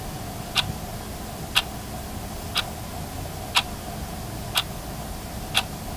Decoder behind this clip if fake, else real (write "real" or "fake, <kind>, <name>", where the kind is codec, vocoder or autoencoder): real